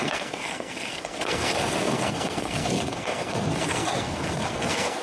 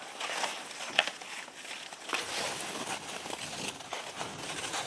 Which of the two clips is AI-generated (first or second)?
first